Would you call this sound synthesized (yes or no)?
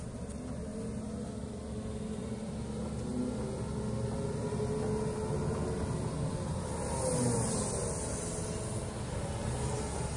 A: no